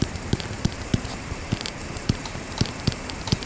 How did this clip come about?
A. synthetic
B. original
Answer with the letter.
A